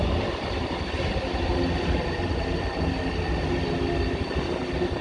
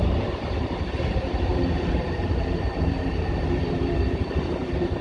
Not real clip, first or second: second